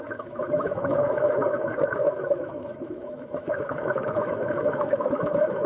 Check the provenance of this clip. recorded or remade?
remade